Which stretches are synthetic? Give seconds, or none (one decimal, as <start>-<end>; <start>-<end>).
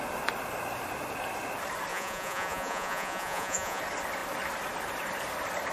1.9-3.8